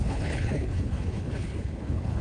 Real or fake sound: fake